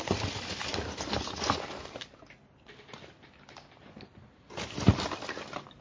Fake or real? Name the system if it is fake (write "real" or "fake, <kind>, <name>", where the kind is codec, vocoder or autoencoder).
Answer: real